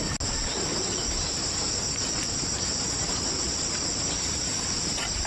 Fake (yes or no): no